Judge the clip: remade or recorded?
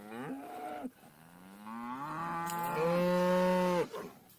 recorded